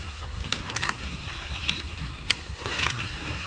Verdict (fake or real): fake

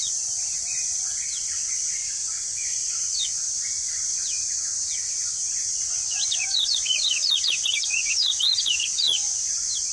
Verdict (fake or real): fake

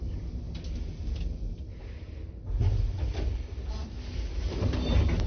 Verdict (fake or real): real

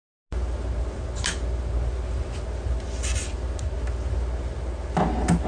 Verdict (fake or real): real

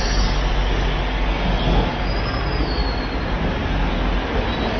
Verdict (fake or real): real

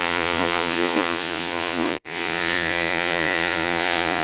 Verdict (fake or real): fake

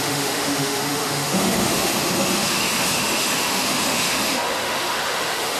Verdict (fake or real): fake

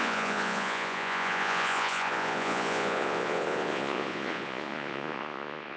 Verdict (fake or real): fake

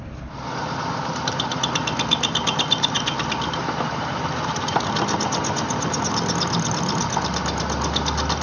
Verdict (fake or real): real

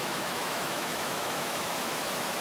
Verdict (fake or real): fake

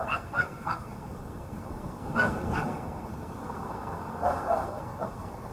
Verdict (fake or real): fake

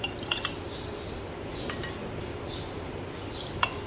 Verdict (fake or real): fake